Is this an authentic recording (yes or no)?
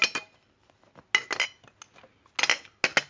yes